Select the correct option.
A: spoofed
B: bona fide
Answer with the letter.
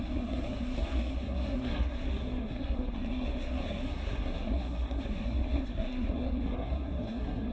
A